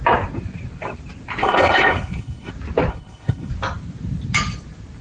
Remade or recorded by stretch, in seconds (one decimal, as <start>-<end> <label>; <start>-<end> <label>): 0.0-1.4 recorded; 1.4-2.5 remade; 2.5-2.9 recorded; 2.9-3.5 remade; 3.5-5.0 recorded